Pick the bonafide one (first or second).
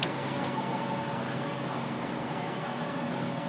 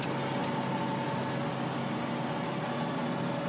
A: second